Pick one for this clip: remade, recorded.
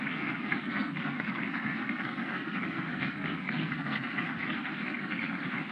remade